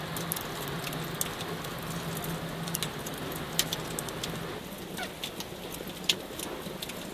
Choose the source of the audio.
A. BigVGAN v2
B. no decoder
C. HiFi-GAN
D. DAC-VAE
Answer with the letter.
B